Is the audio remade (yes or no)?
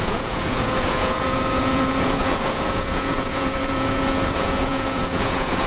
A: yes